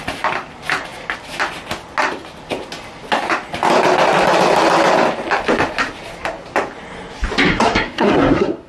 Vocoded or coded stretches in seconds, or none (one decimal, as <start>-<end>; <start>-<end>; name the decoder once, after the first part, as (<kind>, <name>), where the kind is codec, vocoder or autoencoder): 7.5-8.7 (codec, SNAC)